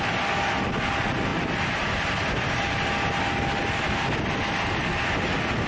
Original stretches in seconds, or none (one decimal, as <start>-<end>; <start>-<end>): 0.0-5.7